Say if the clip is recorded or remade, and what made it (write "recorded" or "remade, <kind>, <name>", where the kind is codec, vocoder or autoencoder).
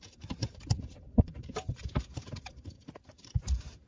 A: remade, vocoder, BigVGAN v2